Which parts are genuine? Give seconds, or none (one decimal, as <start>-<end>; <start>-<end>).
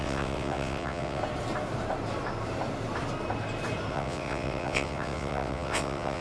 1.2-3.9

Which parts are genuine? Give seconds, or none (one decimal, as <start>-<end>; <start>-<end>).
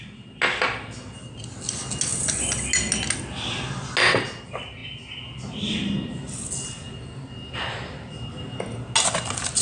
0.0-9.6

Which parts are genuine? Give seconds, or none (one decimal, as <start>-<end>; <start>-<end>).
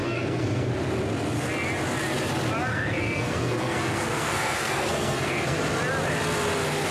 0.7-2.7; 5.6-6.9